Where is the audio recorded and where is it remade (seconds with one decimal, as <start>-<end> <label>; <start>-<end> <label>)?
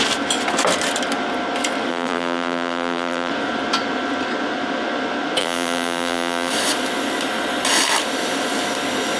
0.0-1.9 recorded; 1.9-3.3 remade; 3.3-5.4 recorded; 5.4-6.5 remade; 6.5-9.2 recorded